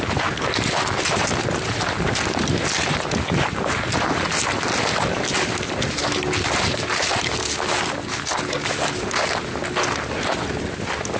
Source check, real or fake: real